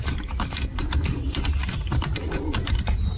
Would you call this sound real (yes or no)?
no